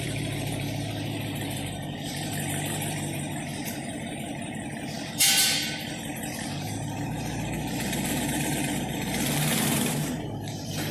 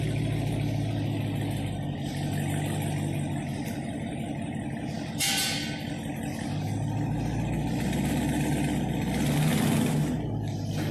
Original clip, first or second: second